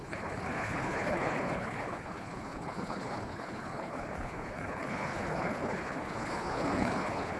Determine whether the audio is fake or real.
fake